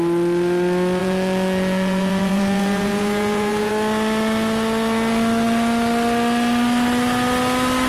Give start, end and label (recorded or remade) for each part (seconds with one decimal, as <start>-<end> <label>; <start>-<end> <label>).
0.0-1.0 recorded; 1.0-3.7 remade; 3.7-7.9 recorded